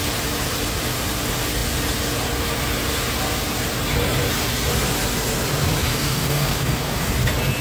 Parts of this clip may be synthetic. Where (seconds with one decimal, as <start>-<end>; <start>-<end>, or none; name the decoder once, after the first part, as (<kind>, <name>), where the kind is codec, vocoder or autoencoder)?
5.9-7.1 (codec, DAC)